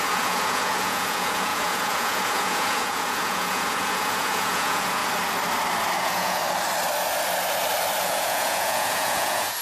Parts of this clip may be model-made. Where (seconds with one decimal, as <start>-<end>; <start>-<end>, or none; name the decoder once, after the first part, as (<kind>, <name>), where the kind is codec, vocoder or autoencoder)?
0.0-5.0 (vocoder, Vocos); 6.0-6.4; 8.0-9.6